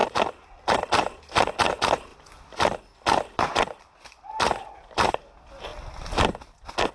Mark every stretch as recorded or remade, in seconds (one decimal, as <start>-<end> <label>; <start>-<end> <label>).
0.0-0.5 remade; 0.5-2.1 recorded; 2.1-5.1 remade; 5.1-5.7 recorded; 5.7-6.9 remade